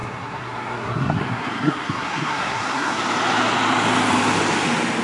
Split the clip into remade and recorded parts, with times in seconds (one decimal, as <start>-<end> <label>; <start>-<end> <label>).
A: 0.0-3.0 remade; 3.0-5.0 recorded